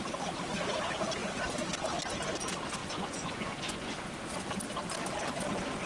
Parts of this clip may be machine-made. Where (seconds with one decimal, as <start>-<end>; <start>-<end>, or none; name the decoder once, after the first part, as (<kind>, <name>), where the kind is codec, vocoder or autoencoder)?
2.8-4.1 (vocoder, Vocos)

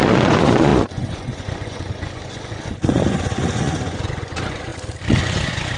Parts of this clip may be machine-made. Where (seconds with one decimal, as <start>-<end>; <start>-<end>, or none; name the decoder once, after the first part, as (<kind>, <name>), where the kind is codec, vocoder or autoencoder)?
0.0-4.7 (vocoder, Vocos); 5.2-5.8

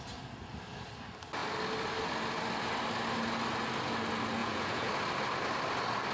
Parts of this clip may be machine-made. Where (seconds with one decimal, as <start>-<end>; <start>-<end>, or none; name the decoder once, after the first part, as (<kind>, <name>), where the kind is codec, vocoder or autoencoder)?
4.4-4.9 (vocoder, Vocos)

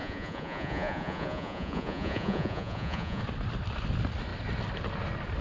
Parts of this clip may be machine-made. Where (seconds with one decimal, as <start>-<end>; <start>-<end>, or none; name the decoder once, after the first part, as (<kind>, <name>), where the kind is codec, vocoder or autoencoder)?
0.0-3.2 (vocoder, Vocos)

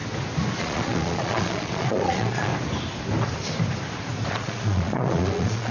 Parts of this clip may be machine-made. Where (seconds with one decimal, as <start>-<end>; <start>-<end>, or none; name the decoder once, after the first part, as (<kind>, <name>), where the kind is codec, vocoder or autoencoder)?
0.6-2.5 (vocoder, Vocos); 4.3-5.7

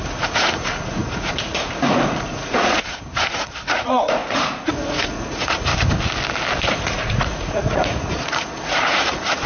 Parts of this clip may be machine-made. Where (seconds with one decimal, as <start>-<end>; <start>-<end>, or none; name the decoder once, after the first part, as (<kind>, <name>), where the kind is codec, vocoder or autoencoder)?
0.0-5.7 (vocoder, Vocos); 6.7-9.5

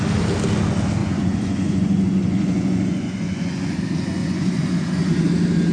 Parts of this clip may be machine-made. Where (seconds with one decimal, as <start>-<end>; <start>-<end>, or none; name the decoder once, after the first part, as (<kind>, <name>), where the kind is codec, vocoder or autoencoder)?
1.0-3.8 (vocoder, Vocos); 4.2-5.3

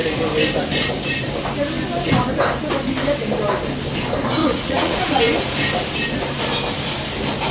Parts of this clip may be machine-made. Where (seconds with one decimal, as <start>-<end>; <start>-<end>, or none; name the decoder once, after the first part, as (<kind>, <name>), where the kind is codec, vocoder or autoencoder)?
4.4-5.2 (vocoder, Vocos)